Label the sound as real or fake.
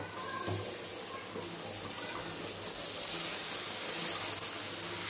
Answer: real